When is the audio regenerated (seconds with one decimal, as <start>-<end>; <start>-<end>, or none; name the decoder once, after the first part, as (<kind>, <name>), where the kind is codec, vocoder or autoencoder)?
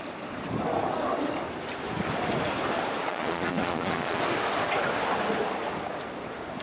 3.1-4.2 (vocoder, Vocos)